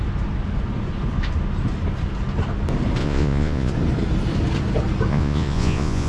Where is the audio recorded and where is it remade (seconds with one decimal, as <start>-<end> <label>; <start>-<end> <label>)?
0.0-3.0 recorded; 3.0-3.7 remade; 3.7-5.1 recorded; 5.1-6.1 remade